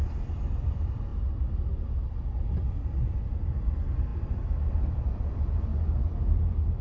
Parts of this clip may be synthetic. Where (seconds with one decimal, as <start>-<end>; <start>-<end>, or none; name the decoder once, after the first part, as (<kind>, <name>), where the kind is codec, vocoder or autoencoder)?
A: 0.0-5.7 (vocoder, BigVGAN v2)